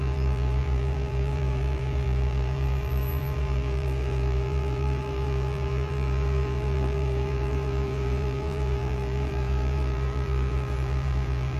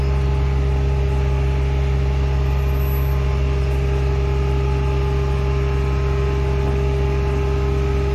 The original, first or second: second